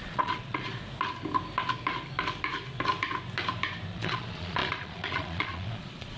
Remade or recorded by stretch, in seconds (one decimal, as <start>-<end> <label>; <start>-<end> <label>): 0.0-0.7 remade; 0.7-3.9 recorded; 3.9-6.2 remade